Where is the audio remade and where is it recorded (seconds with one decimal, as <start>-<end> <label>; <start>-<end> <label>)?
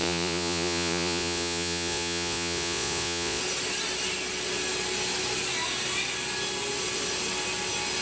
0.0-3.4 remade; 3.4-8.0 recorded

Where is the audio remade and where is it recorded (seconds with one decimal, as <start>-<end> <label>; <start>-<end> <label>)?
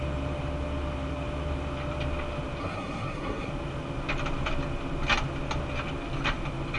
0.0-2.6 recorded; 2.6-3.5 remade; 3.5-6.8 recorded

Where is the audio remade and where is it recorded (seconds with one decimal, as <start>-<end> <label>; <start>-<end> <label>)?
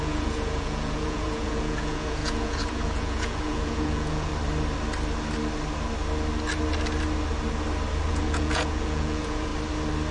0.0-4.3 remade; 4.3-8.1 recorded; 8.1-9.5 remade; 9.5-10.1 recorded